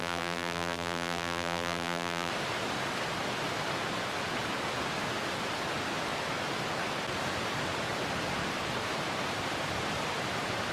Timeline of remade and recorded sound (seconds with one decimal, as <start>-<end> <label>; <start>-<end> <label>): 0.0-2.3 remade; 2.3-10.7 recorded